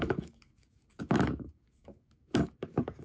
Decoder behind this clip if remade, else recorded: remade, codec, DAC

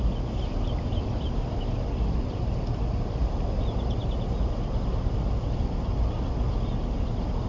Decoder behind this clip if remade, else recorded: recorded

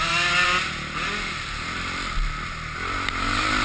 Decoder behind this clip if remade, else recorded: recorded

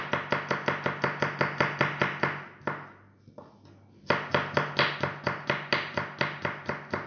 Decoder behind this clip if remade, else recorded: recorded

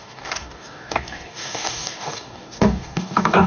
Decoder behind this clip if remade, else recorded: remade, codec, DAC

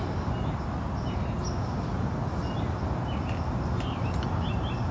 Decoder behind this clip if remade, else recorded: recorded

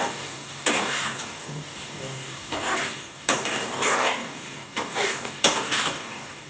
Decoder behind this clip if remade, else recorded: remade, codec, DAC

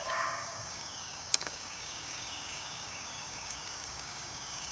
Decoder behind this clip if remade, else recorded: remade, codec, DAC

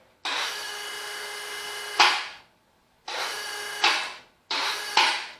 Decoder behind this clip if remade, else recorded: recorded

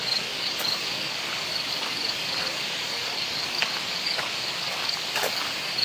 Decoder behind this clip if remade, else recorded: remade, codec, DAC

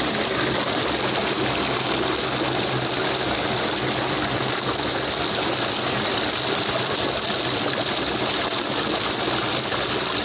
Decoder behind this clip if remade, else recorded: recorded